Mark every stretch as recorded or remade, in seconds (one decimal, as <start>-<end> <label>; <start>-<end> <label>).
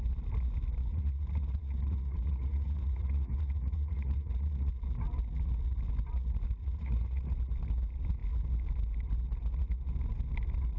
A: 0.0-0.9 recorded; 0.9-4.7 remade; 4.7-6.6 recorded; 6.6-7.2 remade; 7.2-10.8 recorded